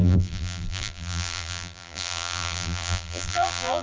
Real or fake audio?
fake